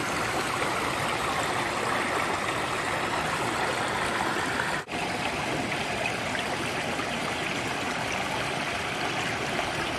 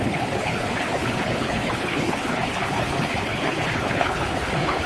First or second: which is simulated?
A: second